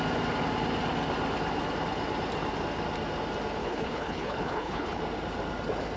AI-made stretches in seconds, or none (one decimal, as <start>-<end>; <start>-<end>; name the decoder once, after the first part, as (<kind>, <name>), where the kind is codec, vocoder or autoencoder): 3.6-5.0 (codec, HILCodec)